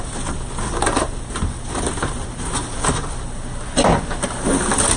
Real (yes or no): yes